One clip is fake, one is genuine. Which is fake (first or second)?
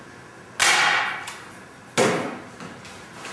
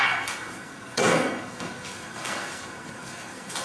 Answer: second